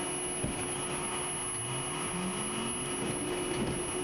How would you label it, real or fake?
real